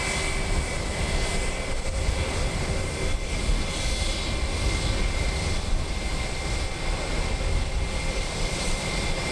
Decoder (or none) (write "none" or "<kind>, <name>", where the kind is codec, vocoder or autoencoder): none